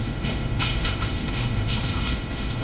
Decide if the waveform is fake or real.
fake